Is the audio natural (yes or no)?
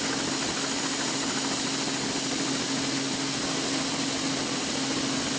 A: yes